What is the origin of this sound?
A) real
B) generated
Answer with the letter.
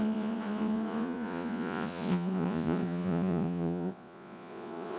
B